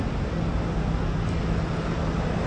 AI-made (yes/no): no